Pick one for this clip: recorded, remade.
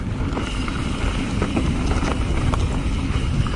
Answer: recorded